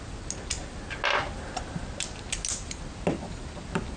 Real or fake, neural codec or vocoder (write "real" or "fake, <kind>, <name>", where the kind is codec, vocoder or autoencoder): real